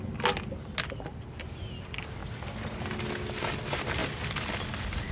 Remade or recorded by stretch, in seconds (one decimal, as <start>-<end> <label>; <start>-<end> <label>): 0.0-5.1 recorded